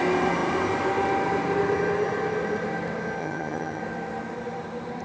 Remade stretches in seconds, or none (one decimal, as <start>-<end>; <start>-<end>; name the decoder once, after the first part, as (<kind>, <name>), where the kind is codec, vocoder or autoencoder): 3.2-3.8 (vocoder, HiFi-GAN)